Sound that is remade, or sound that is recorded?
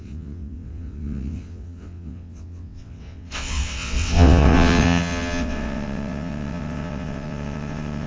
remade